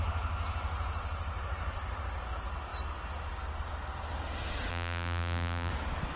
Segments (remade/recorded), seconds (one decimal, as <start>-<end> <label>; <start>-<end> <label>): 0.0-4.7 recorded; 4.7-5.7 remade; 5.7-6.2 recorded